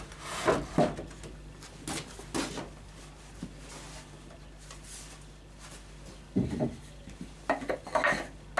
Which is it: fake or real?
real